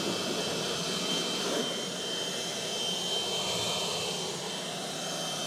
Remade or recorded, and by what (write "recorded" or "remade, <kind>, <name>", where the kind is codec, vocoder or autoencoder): recorded